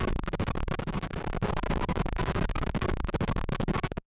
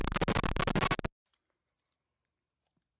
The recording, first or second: second